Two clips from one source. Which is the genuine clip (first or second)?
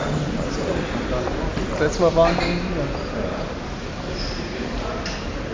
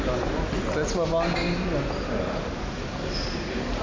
second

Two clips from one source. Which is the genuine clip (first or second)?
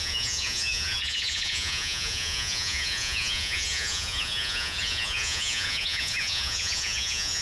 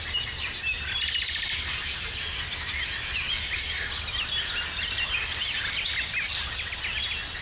second